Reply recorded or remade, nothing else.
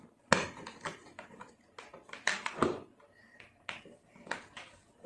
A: recorded